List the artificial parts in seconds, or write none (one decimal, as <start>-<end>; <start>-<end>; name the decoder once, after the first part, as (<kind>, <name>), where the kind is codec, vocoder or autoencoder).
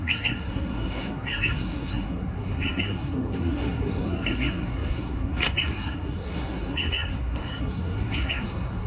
0.0-8.9 (codec, SNAC)